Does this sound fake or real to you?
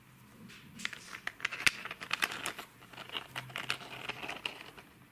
real